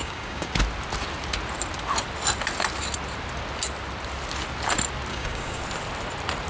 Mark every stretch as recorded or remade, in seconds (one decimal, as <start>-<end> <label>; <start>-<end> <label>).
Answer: 0.0-0.5 remade; 0.5-5.1 recorded; 5.1-5.6 remade; 5.6-6.5 recorded